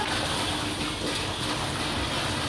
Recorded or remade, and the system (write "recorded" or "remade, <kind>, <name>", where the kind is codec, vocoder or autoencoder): recorded